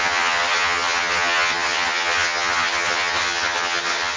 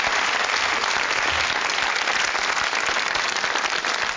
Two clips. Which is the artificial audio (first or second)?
first